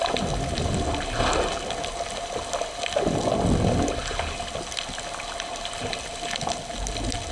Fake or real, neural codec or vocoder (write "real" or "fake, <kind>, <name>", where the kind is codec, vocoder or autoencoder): real